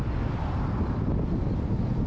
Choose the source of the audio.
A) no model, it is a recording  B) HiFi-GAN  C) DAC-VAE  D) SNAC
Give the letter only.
A